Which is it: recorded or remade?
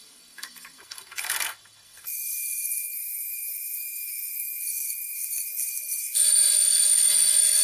remade